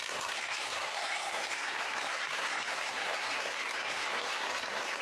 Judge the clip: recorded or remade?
remade